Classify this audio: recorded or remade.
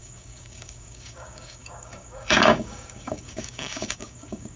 remade